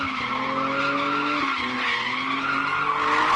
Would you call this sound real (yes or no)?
yes